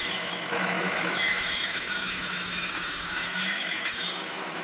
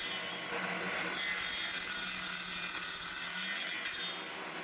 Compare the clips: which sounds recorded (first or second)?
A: second